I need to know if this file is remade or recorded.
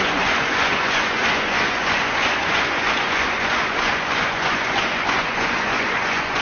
remade